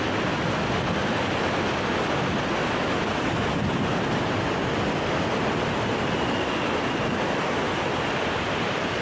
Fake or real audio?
real